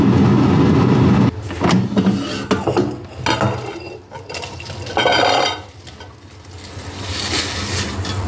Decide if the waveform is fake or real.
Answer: real